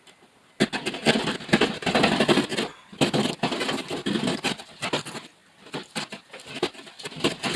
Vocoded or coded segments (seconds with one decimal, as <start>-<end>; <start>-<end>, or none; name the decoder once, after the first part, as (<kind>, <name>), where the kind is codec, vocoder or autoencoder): none